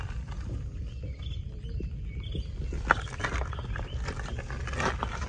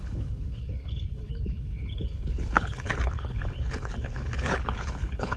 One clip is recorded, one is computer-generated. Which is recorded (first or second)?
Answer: first